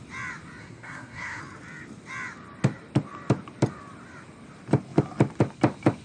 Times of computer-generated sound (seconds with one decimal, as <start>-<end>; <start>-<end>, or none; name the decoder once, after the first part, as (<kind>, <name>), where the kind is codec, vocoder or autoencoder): 0.6-1.4 (codec, SNAC)